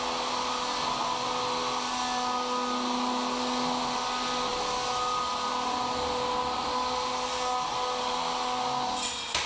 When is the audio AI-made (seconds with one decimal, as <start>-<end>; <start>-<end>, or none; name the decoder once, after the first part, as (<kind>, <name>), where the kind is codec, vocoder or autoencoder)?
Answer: none